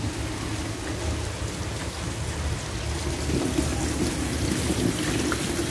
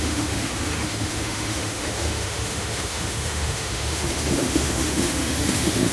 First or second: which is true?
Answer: first